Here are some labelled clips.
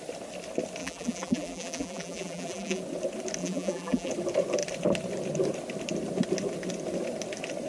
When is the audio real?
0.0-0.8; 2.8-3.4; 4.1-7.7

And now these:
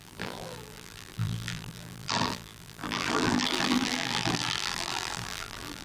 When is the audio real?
none

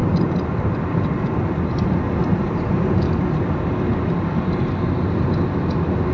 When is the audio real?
0.0-2.2; 3.9-6.1

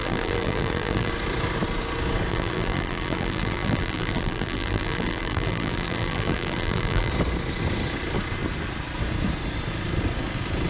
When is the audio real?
1.1-2.3; 7.1-10.7